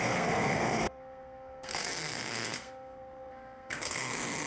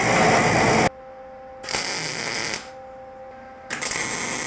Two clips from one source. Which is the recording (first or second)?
second